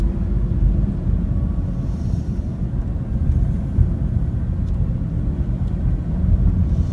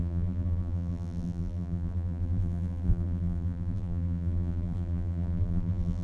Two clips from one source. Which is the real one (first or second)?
first